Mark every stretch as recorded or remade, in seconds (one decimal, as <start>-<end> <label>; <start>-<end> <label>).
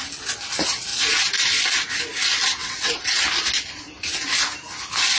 0.0-2.6 recorded; 2.6-3.2 remade; 3.2-5.2 recorded